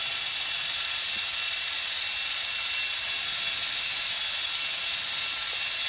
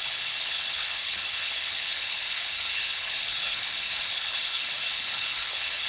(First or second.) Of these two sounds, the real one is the first